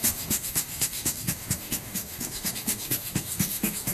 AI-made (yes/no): yes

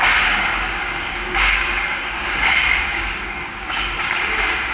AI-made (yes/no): yes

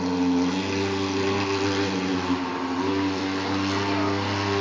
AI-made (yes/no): no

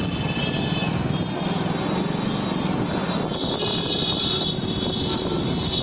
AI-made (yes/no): no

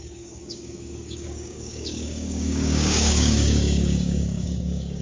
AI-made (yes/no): yes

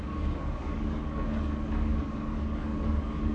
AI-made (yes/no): yes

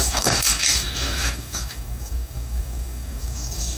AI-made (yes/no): yes